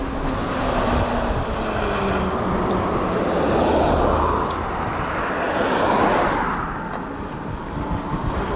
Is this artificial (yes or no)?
no